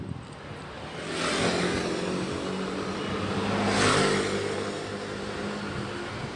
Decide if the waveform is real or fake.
real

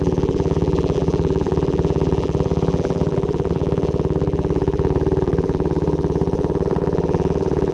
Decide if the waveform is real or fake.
fake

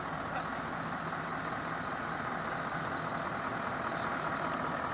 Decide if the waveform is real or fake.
real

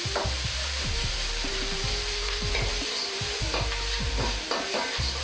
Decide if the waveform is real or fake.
fake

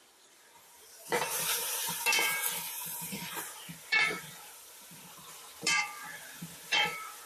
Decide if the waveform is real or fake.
fake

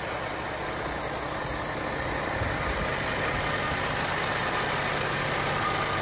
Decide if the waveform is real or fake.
real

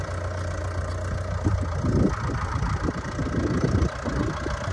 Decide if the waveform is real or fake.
real